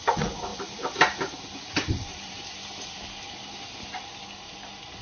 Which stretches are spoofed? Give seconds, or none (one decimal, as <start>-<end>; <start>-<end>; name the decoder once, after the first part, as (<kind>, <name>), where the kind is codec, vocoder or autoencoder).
0.5-2.3 (vocoder, BigVGAN v2)